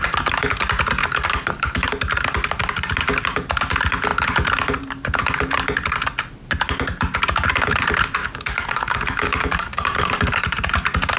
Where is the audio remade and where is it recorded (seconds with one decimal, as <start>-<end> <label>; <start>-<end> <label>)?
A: 0.0-1.0 recorded; 1.0-1.9 remade; 1.9-8.2 recorded; 8.2-10.4 remade; 10.4-11.2 recorded